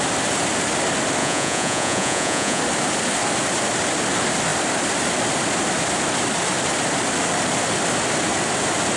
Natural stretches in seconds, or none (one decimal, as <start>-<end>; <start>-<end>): 0.0-1.2; 2.6-9.0